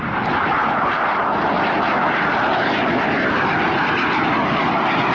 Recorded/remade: recorded